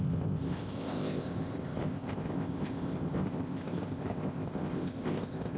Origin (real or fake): fake